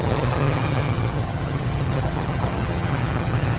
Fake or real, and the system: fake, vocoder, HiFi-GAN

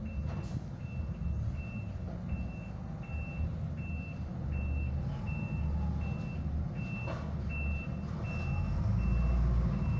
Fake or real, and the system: real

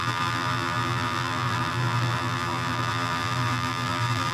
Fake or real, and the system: fake, vocoder, BigVGAN v2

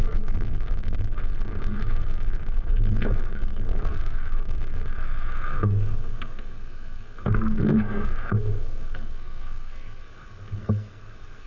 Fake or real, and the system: fake, codec, SNAC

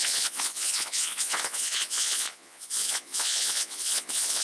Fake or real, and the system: fake, vocoder, Vocos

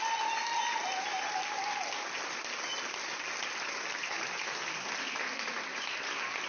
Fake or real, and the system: real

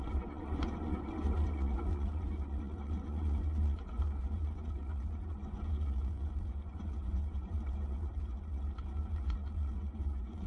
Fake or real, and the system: fake, vocoder, Vocos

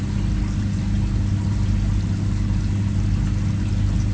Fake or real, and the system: real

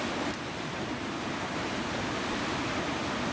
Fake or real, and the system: fake, vocoder, BigVGAN v2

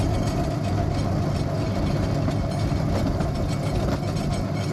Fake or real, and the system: real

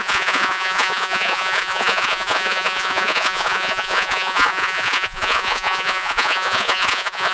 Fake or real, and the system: fake, vocoder, Vocos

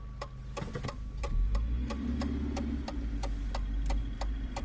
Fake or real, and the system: real